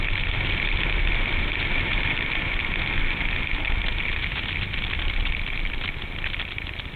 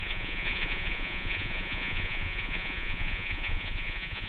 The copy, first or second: second